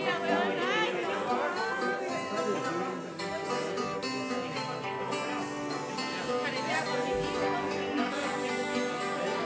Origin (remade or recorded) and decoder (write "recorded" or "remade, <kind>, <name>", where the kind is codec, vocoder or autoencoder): recorded